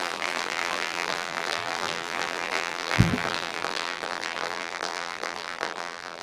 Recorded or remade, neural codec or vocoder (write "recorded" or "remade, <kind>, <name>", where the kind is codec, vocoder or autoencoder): remade, vocoder, BigVGAN v2